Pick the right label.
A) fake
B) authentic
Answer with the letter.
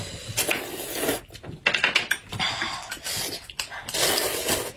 B